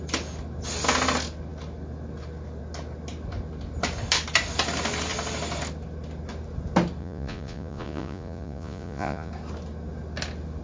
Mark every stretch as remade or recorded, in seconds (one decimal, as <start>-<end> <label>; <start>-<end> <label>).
0.0-7.0 recorded; 7.0-9.3 remade; 9.3-10.6 recorded